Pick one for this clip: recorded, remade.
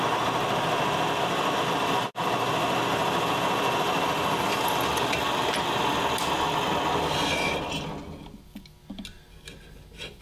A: recorded